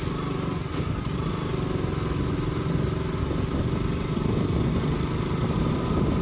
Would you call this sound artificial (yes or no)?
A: no